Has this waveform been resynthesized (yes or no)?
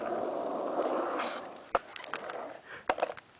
no